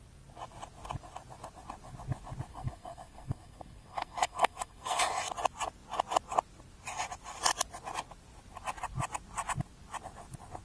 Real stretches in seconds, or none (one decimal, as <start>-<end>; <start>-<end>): 0.0-2.5; 5.0-10.6